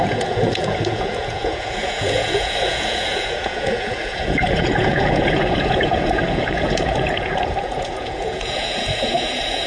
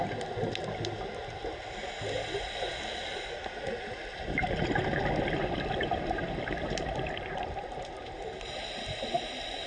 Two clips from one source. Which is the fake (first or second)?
first